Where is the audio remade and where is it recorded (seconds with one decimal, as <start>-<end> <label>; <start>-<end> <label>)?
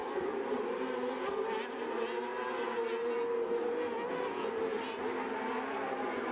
0.0-1.3 remade; 1.3-6.3 recorded